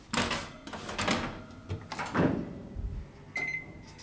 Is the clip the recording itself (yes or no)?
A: yes